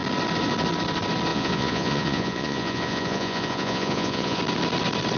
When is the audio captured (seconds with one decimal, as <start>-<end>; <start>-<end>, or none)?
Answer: 0.0-1.3; 4.4-5.2